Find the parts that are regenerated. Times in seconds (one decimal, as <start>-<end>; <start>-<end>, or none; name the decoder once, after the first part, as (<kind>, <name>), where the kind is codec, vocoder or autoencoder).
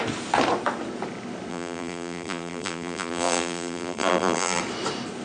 1.5-4.6 (vocoder, BigVGAN v2)